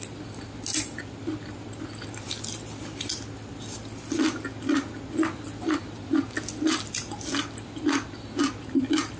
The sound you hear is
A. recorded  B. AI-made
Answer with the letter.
A